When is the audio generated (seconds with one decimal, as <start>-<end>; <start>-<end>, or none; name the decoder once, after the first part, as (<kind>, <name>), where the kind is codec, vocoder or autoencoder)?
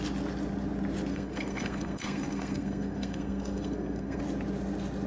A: 1.1-4.2 (codec, SNAC)